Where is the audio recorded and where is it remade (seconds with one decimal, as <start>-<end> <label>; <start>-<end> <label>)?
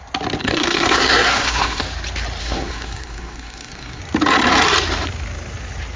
0.0-0.4 recorded; 0.4-1.8 remade; 1.8-2.4 recorded; 2.4-4.0 remade; 4.0-6.0 recorded